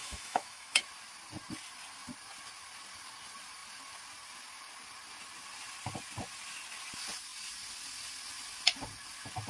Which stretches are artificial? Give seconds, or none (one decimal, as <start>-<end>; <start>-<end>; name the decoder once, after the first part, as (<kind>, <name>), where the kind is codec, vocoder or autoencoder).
0.0-0.8 (autoencoder, DAC-VAE)